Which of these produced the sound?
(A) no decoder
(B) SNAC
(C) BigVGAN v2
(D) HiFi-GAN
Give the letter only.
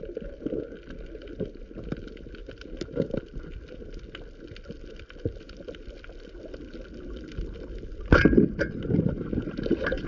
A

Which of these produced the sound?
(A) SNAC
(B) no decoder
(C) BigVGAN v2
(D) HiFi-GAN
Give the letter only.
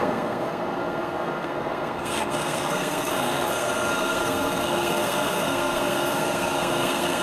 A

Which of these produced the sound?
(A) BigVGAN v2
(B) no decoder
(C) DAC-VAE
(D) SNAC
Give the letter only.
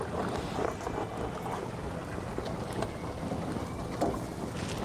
B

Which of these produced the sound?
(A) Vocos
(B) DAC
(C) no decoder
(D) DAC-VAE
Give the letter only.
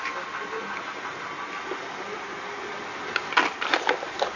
C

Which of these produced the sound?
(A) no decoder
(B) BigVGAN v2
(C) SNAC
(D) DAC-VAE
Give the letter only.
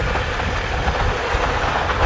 A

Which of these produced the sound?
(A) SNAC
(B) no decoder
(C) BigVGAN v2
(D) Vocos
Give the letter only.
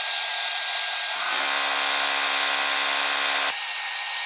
B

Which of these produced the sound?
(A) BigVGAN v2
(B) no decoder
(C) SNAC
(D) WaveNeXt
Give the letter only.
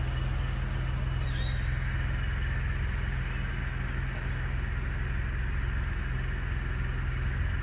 B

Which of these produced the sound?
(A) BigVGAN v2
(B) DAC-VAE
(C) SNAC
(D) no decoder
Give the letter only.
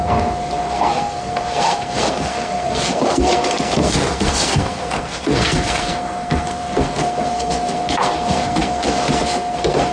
C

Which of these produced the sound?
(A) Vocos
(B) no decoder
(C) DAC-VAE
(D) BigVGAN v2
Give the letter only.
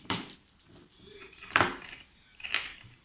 D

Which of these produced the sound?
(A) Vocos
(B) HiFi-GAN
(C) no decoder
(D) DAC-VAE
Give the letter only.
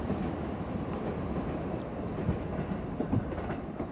C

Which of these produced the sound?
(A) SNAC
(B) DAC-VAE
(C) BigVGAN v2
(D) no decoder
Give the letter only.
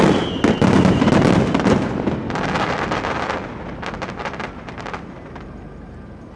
D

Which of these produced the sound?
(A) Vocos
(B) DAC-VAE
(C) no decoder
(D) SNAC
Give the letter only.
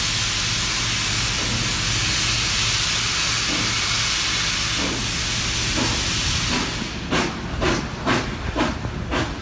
C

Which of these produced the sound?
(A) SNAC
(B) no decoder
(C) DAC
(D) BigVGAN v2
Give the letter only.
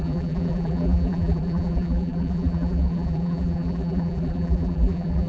D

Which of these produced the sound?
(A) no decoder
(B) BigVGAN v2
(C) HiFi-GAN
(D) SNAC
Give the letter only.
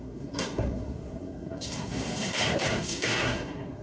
D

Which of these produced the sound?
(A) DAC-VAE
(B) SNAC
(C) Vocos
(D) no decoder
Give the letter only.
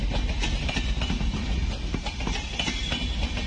D